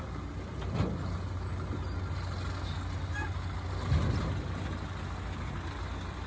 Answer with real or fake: real